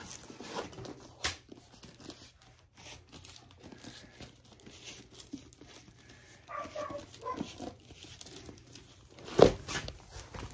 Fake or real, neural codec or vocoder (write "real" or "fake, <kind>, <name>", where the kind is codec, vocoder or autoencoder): real